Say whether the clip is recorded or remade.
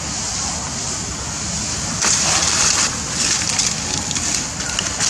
recorded